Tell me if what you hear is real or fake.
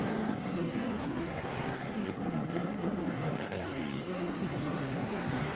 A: fake